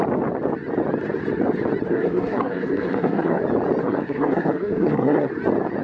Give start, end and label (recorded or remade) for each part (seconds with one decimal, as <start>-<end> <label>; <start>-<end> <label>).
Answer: 0.0-1.9 recorded; 1.9-3.4 remade; 3.4-3.8 recorded; 3.8-5.3 remade; 5.3-5.8 recorded

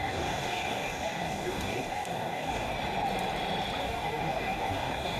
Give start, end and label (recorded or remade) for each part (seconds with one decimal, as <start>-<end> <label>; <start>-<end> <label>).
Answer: 0.0-2.7 remade; 2.7-3.8 recorded; 3.8-5.2 remade

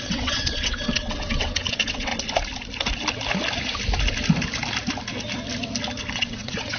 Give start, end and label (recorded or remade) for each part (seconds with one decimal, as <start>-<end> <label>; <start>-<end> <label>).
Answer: 0.0-2.1 remade; 2.1-6.1 recorded; 6.1-6.8 remade

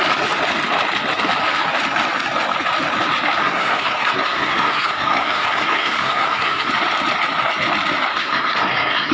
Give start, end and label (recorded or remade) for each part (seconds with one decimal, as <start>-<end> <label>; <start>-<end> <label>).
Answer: 0.0-3.4 recorded; 3.4-6.7 remade; 6.7-8.1 recorded; 8.1-9.1 remade

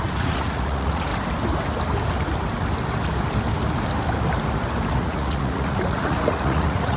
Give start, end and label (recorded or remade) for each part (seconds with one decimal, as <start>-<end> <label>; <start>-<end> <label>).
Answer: 0.0-1.1 remade; 1.1-4.9 recorded; 4.9-7.0 remade

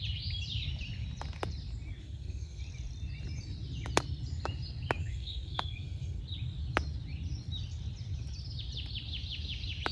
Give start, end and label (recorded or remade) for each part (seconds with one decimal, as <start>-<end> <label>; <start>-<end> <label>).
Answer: 0.0-2.0 recorded; 2.0-2.6 remade; 2.6-5.0 recorded; 5.0-6.2 remade; 6.2-9.9 recorded